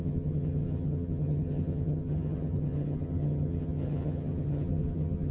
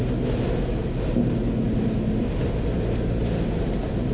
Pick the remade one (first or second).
first